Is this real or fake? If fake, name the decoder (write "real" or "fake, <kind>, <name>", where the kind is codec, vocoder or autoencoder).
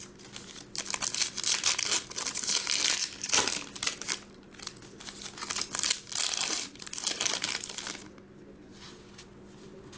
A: real